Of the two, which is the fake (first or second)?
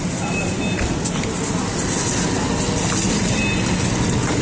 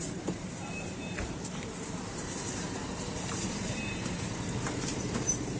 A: second